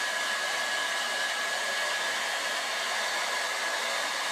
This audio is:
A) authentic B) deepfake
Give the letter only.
A